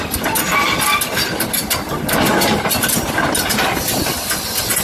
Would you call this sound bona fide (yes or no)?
yes